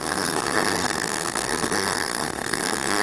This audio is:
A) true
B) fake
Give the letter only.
B